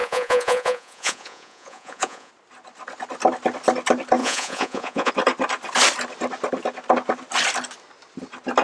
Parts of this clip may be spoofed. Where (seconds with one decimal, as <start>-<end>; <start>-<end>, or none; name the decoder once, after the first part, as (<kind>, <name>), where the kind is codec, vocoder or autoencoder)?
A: 0.0-2.3 (vocoder, Vocos); 4.2-5.1